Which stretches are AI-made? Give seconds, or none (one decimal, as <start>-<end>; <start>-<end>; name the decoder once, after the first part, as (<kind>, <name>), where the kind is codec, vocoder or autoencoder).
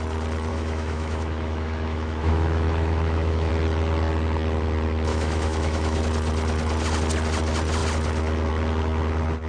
0.5-3.5 (autoencoder, DAC-VAE); 5.1-6.0